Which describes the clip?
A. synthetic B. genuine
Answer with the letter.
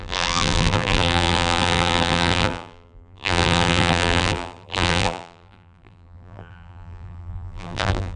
A